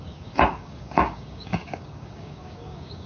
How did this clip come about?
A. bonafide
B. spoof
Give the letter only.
B